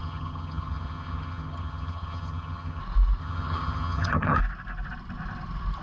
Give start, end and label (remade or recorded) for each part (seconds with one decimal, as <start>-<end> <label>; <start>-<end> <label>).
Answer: 0.0-2.8 remade; 2.8-3.2 recorded; 3.2-4.4 remade; 4.4-5.8 recorded